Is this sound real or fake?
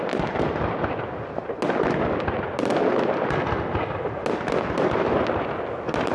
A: real